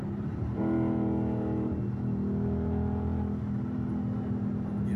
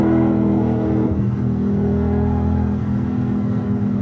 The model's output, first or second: second